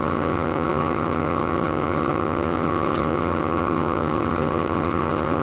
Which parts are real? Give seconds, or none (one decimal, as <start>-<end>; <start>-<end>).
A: none